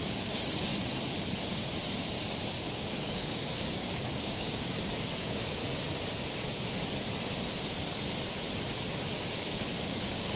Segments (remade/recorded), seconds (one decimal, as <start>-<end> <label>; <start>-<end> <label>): 0.0-0.7 remade; 0.7-2.6 recorded; 2.6-5.6 remade; 5.6-9.3 recorded; 9.3-10.4 remade